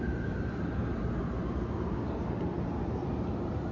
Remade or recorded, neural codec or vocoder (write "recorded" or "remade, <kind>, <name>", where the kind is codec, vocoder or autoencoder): recorded